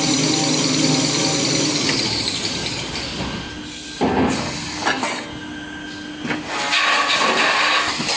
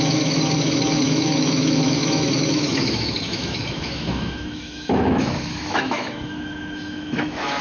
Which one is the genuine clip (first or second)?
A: first